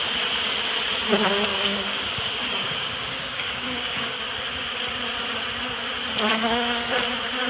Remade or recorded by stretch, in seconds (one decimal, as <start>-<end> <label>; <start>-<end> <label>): 0.0-1.5 recorded; 1.5-4.2 remade; 4.2-6.3 recorded; 6.3-6.9 remade; 6.9-7.5 recorded